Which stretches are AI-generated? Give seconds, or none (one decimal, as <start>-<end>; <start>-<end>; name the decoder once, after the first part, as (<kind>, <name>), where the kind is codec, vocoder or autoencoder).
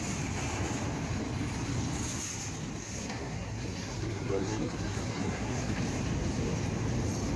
2.8-5.8 (codec, SNAC)